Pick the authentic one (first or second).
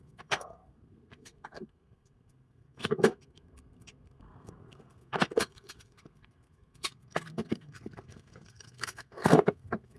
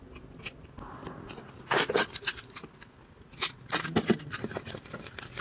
second